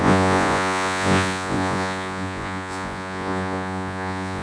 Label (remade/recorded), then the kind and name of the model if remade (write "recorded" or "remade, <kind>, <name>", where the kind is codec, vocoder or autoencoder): remade, vocoder, Vocos